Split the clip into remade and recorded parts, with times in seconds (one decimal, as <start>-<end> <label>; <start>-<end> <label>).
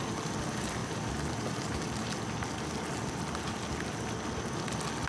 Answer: 0.0-5.1 recorded